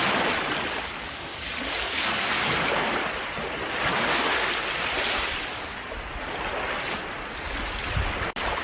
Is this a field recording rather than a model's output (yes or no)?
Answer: yes